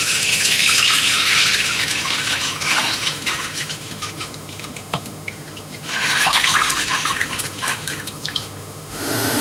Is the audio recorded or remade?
remade